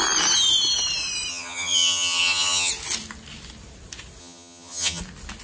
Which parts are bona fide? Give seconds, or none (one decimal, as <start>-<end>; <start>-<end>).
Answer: 0.0-1.3; 2.7-4.2; 5.0-5.4